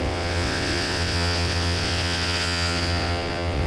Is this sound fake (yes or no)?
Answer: yes